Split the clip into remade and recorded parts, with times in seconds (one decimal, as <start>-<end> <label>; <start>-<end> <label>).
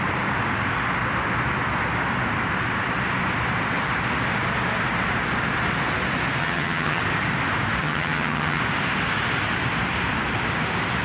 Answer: 0.0-6.4 recorded; 6.4-7.0 remade; 7.0-7.8 recorded; 7.8-8.6 remade; 8.6-11.0 recorded